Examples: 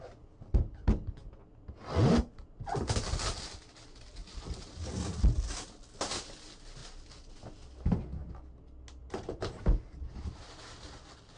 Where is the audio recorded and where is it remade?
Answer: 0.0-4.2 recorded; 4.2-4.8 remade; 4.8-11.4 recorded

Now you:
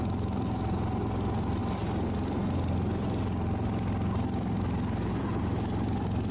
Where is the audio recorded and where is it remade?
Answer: 0.0-1.6 remade; 1.6-5.4 recorded; 5.4-6.3 remade

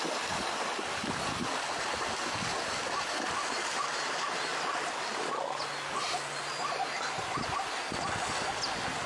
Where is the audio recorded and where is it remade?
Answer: 0.0-9.1 recorded

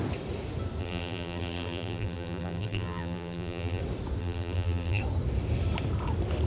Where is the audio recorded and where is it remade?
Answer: 0.0-0.8 recorded; 0.8-3.8 remade; 3.8-4.2 recorded; 4.2-5.0 remade; 5.0-6.5 recorded

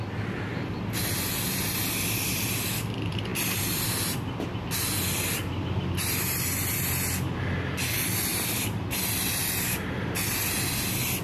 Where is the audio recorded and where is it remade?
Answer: 0.0-11.2 recorded